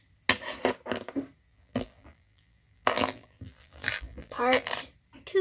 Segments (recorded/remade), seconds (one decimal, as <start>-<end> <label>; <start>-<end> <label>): 0.0-1.5 recorded; 1.5-4.7 remade; 4.7-5.4 recorded